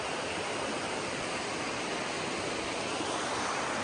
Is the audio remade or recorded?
recorded